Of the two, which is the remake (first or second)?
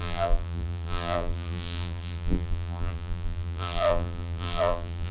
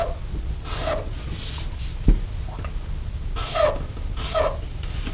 first